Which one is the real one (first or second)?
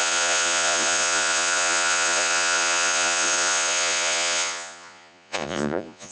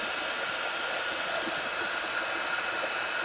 second